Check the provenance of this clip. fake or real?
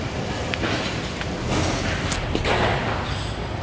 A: real